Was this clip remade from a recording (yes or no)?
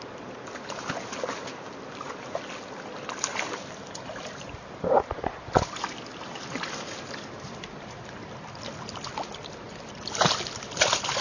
no